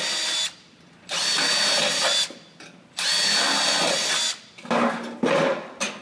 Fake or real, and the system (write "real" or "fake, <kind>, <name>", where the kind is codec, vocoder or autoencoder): real